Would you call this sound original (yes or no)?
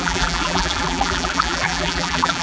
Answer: no